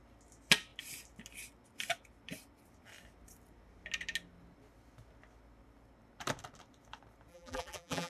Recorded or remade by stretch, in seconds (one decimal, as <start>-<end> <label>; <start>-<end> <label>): 0.0-7.3 recorded; 7.3-8.1 remade